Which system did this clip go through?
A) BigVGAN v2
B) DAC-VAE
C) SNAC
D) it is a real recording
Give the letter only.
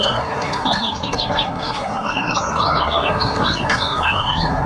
C